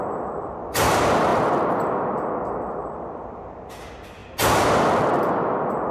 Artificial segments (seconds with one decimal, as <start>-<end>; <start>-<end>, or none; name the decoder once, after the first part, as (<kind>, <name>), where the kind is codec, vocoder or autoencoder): none